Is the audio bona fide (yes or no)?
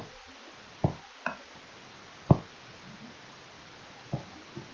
yes